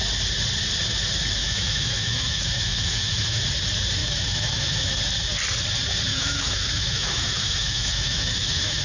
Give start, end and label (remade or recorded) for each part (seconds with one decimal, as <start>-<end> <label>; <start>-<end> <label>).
0.0-1.4 recorded; 1.4-3.4 remade; 3.4-4.0 recorded; 4.0-5.0 remade; 5.0-6.1 recorded; 6.1-8.8 remade